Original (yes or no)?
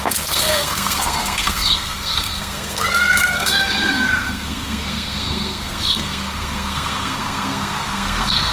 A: no